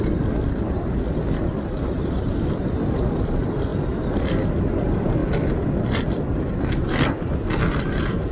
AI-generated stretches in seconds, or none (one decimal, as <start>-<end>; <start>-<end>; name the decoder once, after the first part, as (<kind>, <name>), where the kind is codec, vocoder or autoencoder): 0.0-3.7 (vocoder, BigVGAN v2); 4.6-8.3